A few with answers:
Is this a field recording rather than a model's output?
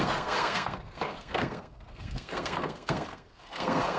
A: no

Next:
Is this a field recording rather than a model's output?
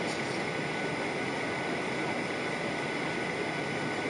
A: yes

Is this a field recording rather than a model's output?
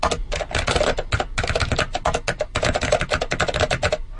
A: yes